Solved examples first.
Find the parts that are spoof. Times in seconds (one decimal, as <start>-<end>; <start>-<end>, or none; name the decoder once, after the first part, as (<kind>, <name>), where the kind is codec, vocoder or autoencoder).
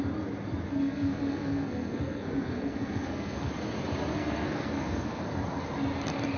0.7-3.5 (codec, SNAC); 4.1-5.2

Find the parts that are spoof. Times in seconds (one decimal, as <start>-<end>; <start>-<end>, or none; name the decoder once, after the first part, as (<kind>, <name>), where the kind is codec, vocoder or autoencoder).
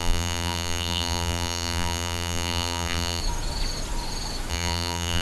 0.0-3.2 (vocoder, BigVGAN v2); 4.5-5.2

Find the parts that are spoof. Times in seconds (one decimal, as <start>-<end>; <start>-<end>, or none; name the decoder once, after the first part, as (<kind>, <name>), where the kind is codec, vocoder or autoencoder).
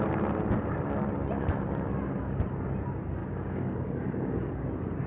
3.2-4.5 (codec, DAC)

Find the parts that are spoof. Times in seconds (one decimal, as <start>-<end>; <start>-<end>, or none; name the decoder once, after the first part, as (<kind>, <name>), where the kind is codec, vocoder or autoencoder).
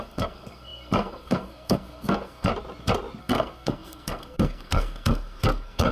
0.0-2.5 (codec, SNAC); 3.2-5.9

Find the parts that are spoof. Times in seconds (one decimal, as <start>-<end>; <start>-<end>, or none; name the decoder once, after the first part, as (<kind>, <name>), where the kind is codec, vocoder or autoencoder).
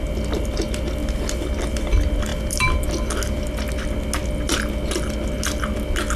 none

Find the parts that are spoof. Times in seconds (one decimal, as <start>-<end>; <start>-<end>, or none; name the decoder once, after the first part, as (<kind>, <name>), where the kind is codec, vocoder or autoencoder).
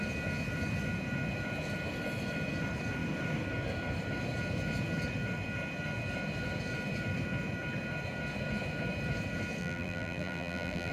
9.6-10.9 (vocoder, BigVGAN v2)